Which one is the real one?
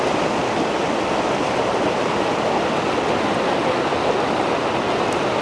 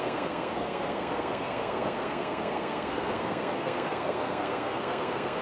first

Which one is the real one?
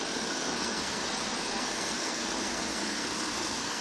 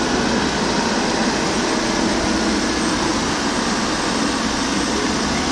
second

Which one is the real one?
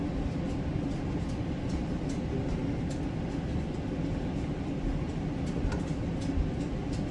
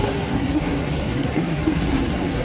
first